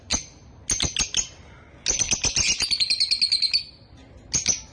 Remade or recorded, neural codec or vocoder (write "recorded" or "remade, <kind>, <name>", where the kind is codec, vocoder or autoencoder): recorded